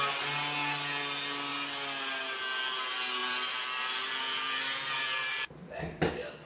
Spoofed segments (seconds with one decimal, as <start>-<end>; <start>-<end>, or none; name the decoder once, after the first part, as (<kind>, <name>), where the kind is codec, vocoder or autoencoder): 3.2-6.1 (vocoder, BigVGAN v2)

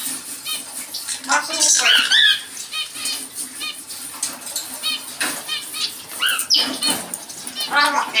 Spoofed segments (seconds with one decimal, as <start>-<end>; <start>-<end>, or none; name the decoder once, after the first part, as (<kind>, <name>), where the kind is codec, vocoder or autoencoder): none

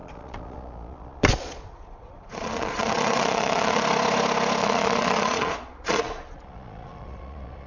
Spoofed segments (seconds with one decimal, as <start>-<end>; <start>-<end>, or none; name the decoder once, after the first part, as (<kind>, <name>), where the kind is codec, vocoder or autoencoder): 0.0-3.8 (vocoder, Vocos); 4.6-7.7

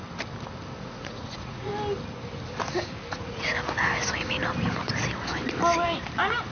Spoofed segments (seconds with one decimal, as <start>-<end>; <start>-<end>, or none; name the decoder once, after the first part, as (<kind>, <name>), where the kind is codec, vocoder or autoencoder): 0.8-1.7 (vocoder, Vocos); 3.1-3.5

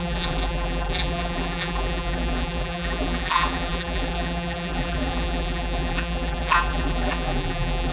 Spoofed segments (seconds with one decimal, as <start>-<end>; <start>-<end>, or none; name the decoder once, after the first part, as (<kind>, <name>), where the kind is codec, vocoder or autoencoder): 0.0-7.9 (vocoder, BigVGAN v2)

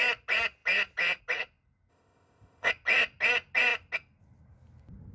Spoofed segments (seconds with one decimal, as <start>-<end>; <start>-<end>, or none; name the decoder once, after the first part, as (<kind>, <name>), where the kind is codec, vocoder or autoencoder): 1.9-2.7 (codec, ZipCodec)

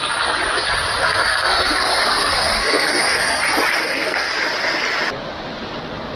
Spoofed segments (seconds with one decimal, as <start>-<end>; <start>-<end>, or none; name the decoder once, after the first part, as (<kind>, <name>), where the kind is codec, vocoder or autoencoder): 1.0-3.4 (codec, SNAC); 3.8-4.3